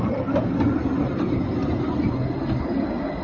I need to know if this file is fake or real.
real